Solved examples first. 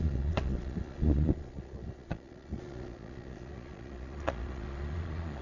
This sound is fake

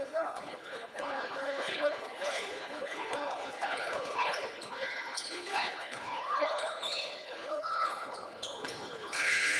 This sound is fake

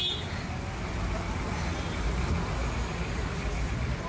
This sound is real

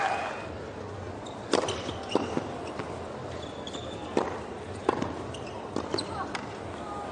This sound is real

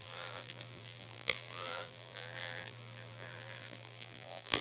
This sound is fake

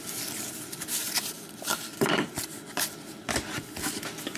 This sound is real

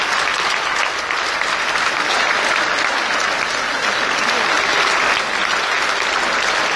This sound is real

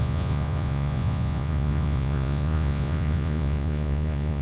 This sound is fake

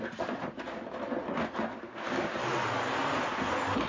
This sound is real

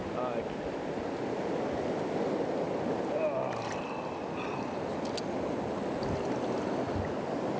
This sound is real